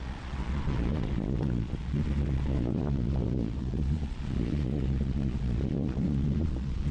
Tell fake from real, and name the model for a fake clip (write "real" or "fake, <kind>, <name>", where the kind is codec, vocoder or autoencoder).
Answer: fake, vocoder, Vocos